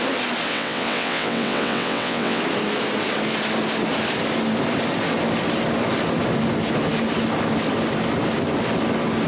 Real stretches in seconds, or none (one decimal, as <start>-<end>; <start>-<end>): 0.0-0.5; 2.4-9.3